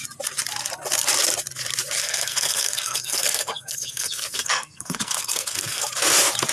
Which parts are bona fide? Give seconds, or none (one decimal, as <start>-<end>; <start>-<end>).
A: 0.0-2.0; 5.9-6.5